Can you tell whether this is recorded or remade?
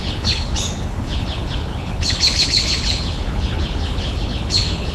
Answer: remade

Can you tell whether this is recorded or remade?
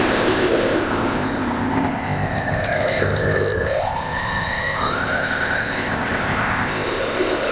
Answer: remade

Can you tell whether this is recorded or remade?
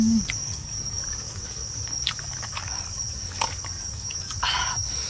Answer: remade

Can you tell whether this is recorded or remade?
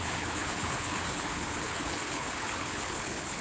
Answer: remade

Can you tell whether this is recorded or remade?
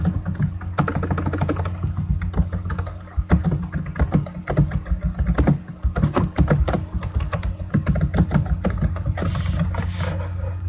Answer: recorded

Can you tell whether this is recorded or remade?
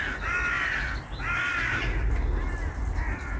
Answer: recorded